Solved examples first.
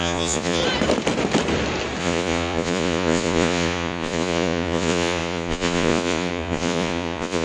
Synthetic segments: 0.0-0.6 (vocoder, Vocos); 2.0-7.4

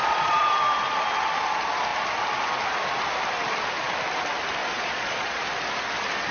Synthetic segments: 0.0-0.5 (vocoder, Vocos); 4.6-5.4

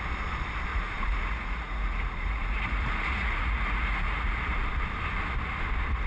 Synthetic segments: 0.7-4.4 (vocoder, Vocos)

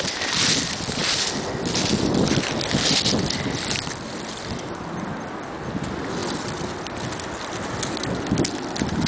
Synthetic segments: none